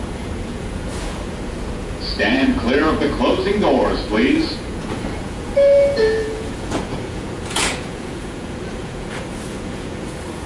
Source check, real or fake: fake